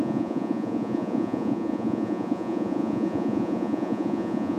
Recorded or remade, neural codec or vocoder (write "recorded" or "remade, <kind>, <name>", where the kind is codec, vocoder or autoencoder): remade, vocoder, Vocos